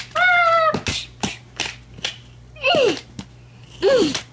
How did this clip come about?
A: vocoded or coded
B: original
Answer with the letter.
B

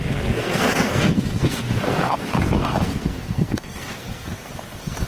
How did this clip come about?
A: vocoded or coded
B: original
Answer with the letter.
A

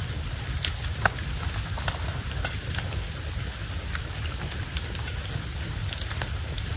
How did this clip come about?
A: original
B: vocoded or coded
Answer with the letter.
A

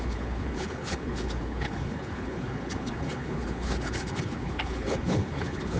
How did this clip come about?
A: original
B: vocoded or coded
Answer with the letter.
B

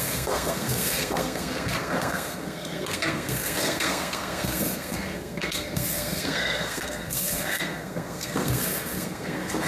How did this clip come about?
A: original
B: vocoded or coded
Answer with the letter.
B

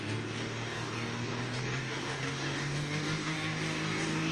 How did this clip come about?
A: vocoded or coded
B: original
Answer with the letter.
A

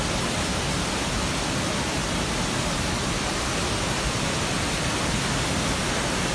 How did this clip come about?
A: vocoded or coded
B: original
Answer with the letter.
B